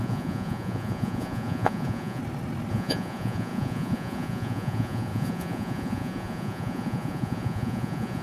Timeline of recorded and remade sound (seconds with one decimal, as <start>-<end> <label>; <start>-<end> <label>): 0.0-2.2 remade; 2.2-2.7 recorded; 2.7-8.2 remade